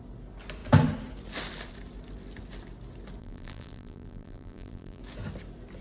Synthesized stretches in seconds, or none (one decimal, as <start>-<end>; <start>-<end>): 3.2-5.0